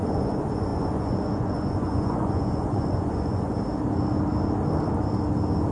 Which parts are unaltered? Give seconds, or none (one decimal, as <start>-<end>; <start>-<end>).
3.5-5.7